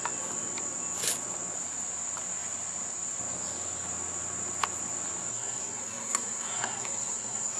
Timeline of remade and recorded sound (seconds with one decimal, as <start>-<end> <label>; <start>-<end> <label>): 0.0-5.3 recorded; 5.3-7.6 remade